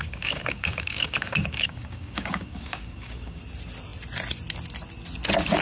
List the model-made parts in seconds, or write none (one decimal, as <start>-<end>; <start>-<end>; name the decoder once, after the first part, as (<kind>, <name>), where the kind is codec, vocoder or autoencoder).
0.0-3.4 (codec, DAC)